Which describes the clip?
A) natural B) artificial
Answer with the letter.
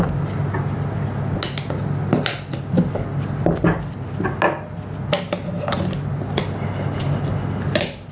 A